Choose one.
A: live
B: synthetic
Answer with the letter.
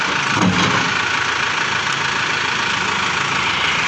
A